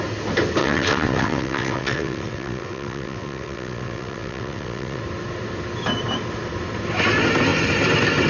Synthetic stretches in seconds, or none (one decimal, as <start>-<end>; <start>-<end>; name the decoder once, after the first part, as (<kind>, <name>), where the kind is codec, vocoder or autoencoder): 0.6-5.0 (vocoder, WaveNeXt)